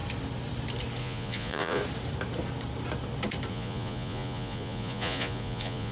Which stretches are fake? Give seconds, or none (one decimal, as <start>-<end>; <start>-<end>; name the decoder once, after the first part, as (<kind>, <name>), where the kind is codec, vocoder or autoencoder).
1.0-1.8 (vocoder, Vocos); 3.5-5.9